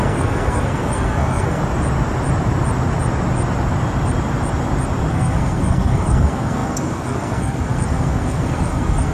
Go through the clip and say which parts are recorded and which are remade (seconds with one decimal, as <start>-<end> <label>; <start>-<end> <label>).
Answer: 0.0-1.6 remade; 1.6-5.1 recorded; 5.1-9.1 remade